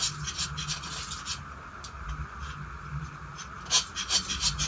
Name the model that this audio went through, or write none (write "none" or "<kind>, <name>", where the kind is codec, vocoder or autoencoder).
none